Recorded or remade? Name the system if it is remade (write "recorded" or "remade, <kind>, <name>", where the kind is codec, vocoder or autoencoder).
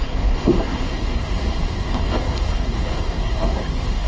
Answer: remade, codec, SNAC